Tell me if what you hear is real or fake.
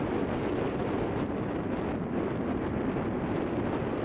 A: real